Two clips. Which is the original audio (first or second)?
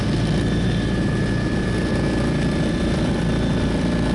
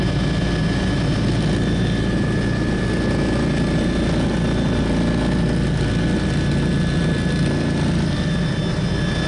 second